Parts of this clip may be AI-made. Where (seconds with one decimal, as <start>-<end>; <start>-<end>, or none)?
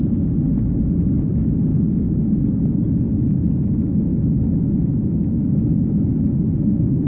1.7-2.4; 4.1-6.0